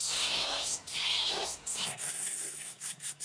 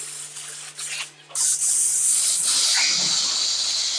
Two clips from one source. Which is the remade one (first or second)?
first